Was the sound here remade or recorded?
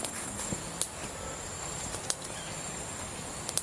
recorded